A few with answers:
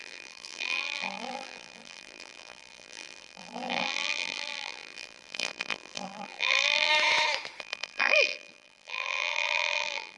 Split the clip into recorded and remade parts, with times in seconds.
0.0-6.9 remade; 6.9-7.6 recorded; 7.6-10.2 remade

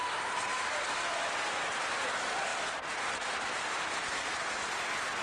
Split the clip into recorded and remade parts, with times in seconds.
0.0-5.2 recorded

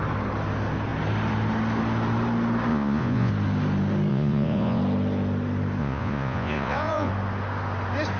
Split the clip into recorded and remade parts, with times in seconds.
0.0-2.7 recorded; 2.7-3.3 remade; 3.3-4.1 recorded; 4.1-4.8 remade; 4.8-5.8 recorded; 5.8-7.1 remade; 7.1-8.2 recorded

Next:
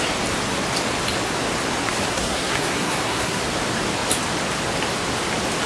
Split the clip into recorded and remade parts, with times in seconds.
0.0-2.1 recorded; 2.1-3.4 remade; 3.4-5.7 recorded